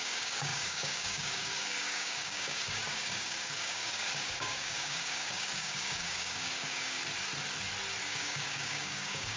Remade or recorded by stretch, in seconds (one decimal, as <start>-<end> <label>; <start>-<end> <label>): 0.0-7.0 remade; 7.0-8.0 recorded; 8.0-9.4 remade